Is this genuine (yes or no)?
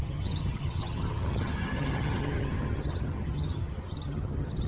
no